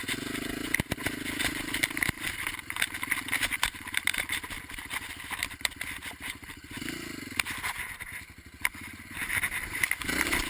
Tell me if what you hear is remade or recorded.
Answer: recorded